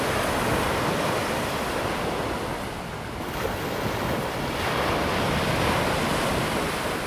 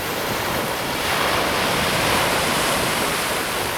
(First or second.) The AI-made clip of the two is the second